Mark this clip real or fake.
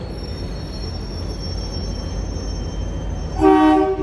real